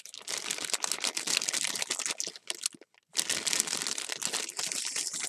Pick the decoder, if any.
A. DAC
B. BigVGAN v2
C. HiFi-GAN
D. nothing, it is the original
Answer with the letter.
D